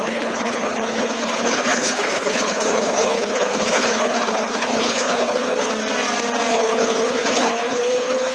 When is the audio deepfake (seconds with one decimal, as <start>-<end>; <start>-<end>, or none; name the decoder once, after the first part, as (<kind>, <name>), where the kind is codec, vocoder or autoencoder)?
0.0-5.7 (codec, HILCodec); 6.5-8.3

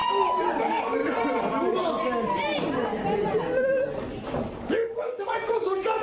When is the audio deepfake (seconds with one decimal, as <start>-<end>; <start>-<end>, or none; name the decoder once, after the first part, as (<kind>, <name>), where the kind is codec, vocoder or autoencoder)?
0.6-1.0 (codec, DAC); 4.6-6.0